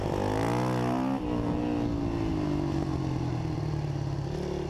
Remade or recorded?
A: recorded